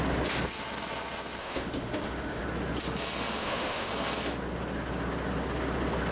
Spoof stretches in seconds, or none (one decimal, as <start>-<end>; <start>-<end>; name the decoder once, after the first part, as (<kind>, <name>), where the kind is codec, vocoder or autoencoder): 1.4-2.4 (autoencoder, DAC-VAE); 3.4-3.9